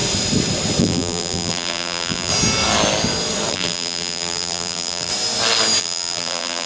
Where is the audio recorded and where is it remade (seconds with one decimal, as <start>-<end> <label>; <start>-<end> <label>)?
0.0-0.8 recorded; 0.8-2.3 remade; 2.3-3.5 recorded; 3.5-5.1 remade; 5.1-5.8 recorded; 5.8-6.7 remade